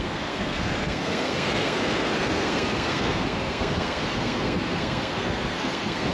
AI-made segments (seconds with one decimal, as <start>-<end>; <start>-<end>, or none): 0.0-6.1